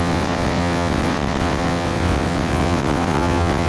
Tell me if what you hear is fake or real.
fake